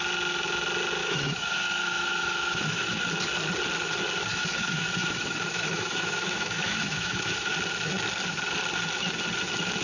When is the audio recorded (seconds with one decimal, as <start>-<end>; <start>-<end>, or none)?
0.0-1.0; 3.0-4.3; 7.5-9.8